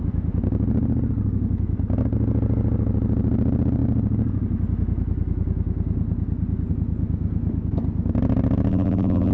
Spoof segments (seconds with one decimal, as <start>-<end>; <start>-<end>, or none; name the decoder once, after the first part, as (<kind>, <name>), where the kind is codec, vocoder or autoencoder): 8.7-9.3 (vocoder, BigVGAN v2)